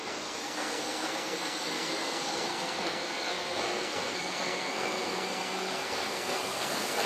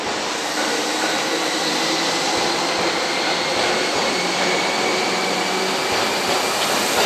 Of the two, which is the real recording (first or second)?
second